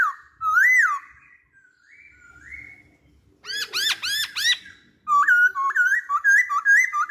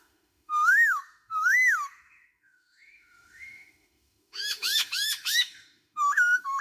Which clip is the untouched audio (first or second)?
first